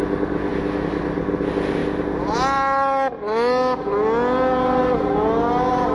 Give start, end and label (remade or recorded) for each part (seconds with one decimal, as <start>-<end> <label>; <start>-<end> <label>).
0.0-5.9 recorded